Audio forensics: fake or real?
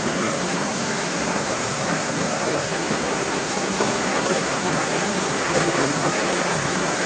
fake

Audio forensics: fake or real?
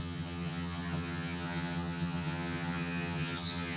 fake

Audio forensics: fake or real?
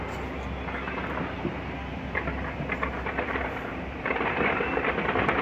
real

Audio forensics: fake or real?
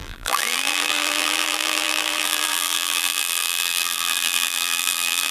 fake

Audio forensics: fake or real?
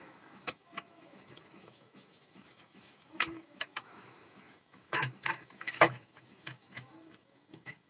fake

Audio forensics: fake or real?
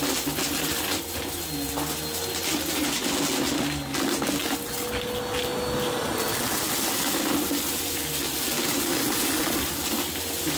real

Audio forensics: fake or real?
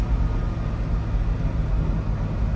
real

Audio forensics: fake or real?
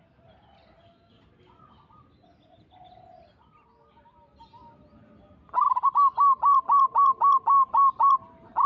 real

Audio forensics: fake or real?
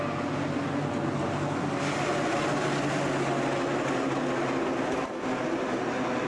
real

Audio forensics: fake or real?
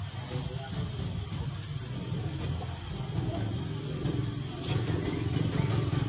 real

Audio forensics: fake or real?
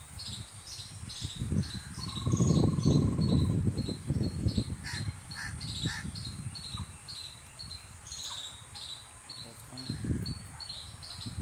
real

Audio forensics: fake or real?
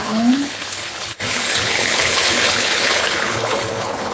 fake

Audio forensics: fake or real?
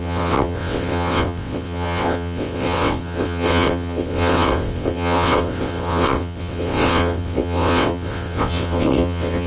fake